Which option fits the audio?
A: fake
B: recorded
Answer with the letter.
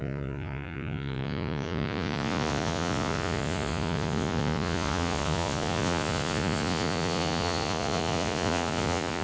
A